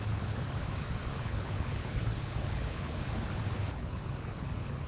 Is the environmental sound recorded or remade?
remade